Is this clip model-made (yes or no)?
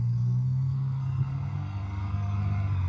yes